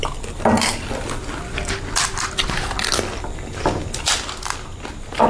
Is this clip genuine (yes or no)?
yes